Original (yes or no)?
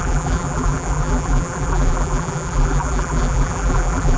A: no